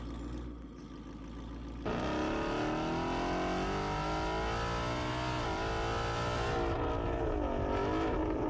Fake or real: real